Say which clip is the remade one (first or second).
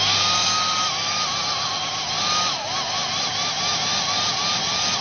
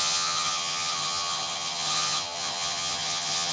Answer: second